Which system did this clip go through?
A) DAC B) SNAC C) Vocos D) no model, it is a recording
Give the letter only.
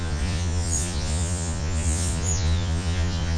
C